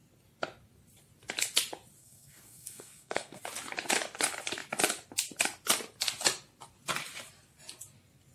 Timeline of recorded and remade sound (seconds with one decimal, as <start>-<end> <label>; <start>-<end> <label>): 0.0-2.0 recorded; 2.0-3.4 remade; 3.4-8.3 recorded